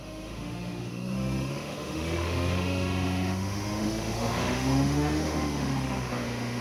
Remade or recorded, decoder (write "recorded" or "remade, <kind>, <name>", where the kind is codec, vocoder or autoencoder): remade, autoencoder, DAC-VAE